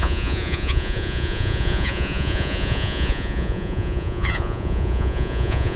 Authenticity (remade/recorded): remade